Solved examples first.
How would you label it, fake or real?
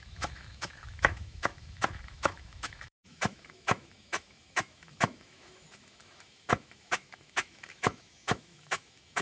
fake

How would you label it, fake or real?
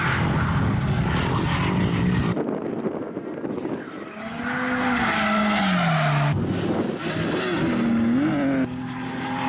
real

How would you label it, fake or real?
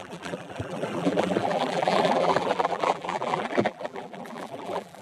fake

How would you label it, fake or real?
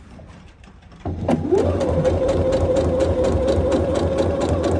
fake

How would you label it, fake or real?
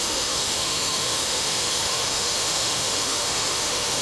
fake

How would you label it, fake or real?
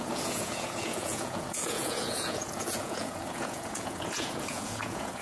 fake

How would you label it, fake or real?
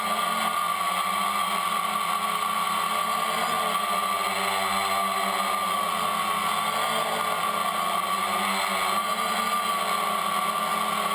real